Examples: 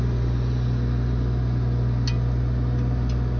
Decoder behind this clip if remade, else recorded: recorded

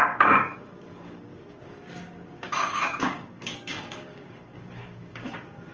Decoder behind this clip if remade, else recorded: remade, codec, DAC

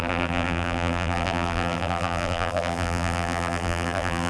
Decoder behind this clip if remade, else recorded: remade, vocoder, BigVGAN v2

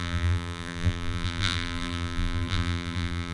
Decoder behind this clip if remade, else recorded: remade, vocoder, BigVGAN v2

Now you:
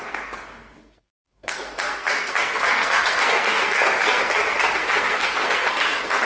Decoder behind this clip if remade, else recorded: remade, codec, SNAC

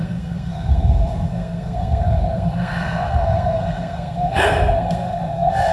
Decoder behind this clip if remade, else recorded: remade, codec, SNAC